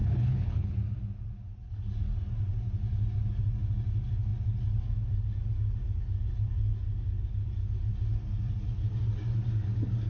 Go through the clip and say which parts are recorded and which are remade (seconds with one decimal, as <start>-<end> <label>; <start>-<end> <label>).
0.0-0.7 remade; 0.7-10.1 recorded